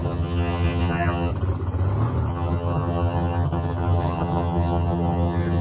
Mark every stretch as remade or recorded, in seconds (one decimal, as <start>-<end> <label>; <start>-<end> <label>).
0.0-1.3 remade; 1.3-2.3 recorded; 2.3-5.6 remade